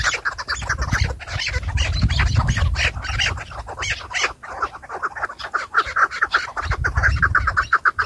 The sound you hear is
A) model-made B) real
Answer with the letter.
B